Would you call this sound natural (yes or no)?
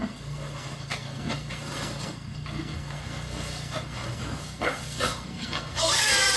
no